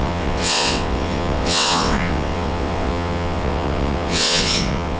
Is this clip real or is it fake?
fake